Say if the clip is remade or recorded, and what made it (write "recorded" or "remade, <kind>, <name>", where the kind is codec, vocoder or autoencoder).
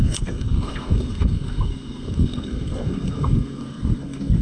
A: remade, codec, SNAC